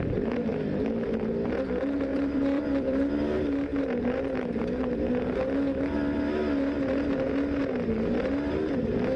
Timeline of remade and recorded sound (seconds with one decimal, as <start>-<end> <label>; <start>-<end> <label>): 0.0-2.1 recorded; 2.1-3.1 remade; 3.1-9.2 recorded